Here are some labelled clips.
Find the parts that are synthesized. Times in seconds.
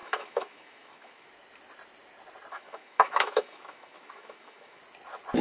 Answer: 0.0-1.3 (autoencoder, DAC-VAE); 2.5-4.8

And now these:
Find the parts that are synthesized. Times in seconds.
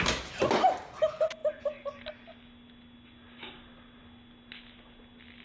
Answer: none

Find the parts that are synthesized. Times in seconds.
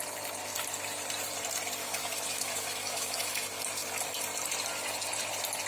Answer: 1.8-3.4 (autoencoder, DAC-VAE)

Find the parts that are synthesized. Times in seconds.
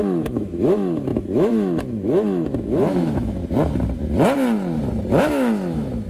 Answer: 0.0-3.4 (autoencoder, DAC-VAE); 5.2-6.1